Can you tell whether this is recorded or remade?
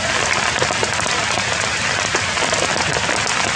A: recorded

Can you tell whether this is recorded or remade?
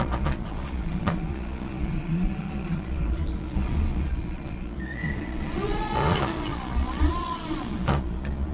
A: remade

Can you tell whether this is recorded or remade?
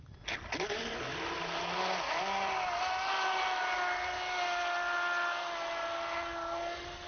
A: recorded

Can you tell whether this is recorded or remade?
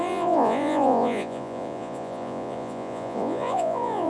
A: remade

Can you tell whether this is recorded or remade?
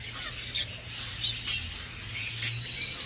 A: recorded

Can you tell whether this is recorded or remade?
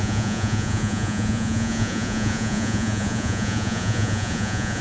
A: remade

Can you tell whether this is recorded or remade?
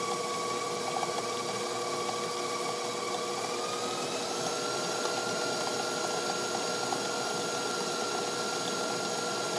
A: recorded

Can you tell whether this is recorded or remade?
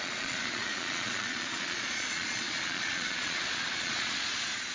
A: remade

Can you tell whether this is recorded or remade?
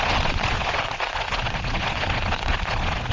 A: remade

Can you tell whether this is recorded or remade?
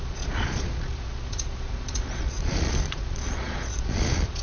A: remade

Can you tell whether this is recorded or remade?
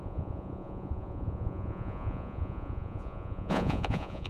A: remade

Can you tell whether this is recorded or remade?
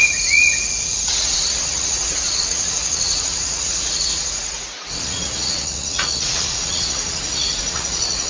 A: remade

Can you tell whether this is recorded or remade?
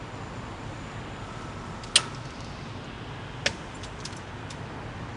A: recorded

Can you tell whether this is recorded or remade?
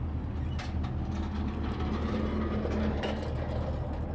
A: recorded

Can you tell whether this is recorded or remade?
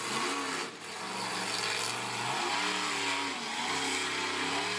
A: recorded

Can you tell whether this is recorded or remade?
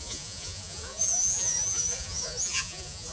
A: remade